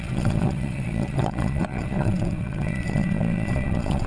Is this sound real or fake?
fake